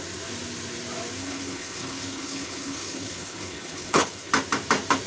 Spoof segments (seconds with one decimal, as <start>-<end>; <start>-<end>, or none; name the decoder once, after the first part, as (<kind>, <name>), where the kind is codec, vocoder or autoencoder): 1.2-4.3 (codec, HILCodec)